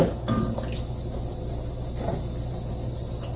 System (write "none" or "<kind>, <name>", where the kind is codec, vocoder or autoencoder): none